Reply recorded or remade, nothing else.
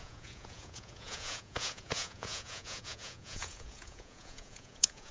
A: remade